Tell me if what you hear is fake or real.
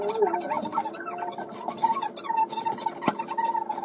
real